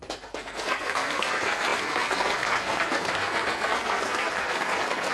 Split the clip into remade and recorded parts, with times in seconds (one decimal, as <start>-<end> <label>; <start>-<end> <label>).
0.0-5.1 remade